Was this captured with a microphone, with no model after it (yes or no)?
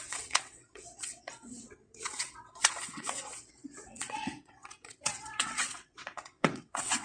no